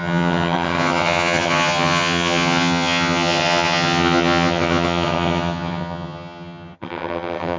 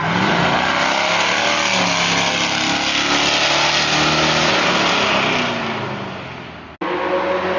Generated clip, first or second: first